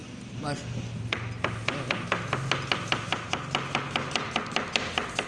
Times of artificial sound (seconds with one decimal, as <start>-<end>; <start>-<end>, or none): none